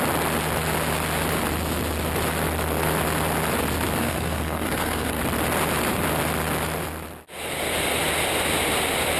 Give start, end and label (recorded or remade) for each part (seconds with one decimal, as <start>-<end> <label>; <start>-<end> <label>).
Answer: 0.0-4.0 recorded; 4.0-5.2 remade; 5.2-9.2 recorded